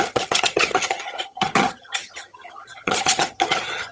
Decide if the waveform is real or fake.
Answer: fake